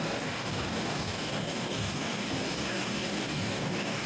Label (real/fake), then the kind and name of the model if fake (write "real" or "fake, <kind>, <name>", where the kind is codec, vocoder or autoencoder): fake, codec, DAC